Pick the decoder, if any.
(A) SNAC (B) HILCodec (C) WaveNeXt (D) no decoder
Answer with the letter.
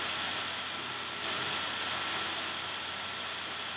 D